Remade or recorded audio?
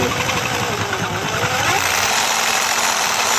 recorded